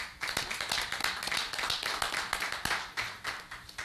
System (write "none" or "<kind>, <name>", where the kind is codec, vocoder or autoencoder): none